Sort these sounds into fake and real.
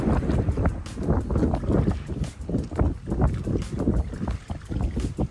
real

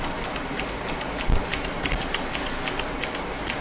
real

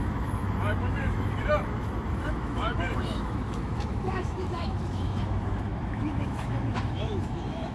fake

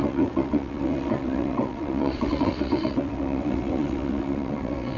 fake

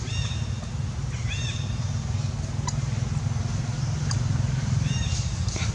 real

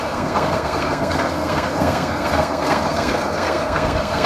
fake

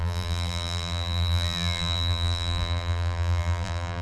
fake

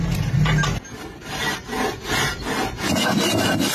real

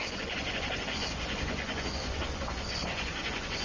fake